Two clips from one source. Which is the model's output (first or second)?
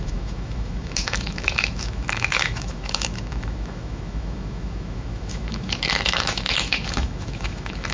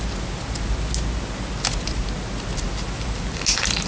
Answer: first